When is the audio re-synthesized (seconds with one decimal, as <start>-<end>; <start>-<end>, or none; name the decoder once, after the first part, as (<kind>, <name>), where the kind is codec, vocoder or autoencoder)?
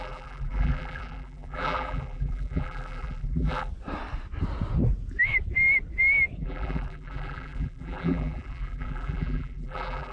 0.0-3.7 (vocoder, BigVGAN v2); 6.4-10.1